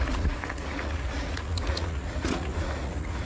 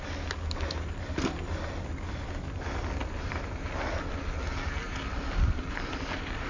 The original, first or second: second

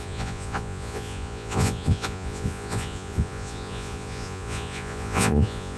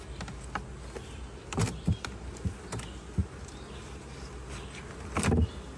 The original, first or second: second